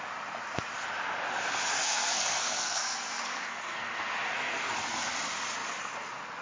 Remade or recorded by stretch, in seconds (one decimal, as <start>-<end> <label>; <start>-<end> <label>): 0.0-1.7 recorded; 1.7-4.7 remade; 4.7-6.4 recorded